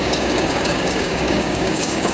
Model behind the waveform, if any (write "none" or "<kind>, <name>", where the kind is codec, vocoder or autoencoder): codec, DAC